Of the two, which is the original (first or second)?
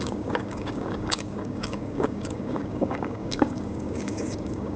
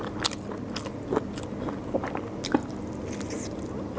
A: second